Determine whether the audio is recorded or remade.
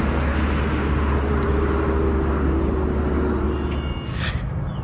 recorded